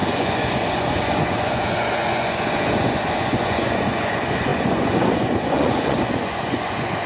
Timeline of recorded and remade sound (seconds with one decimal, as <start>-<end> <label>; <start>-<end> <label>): 0.0-7.1 remade